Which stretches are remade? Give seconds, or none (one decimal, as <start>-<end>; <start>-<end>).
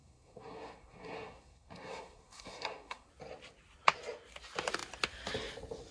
0.0-3.1